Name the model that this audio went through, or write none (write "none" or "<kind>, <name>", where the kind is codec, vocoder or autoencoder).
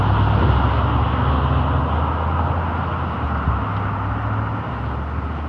none